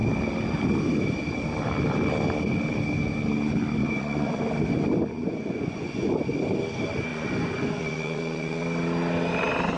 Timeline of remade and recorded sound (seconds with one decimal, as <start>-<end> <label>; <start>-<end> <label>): 0.0-3.8 recorded; 3.8-4.4 remade; 4.4-5.2 recorded; 5.2-6.1 remade; 6.1-7.1 recorded; 7.1-8.6 remade; 8.6-9.8 recorded